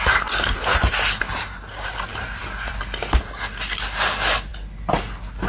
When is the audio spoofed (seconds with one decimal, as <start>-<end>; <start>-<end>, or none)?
none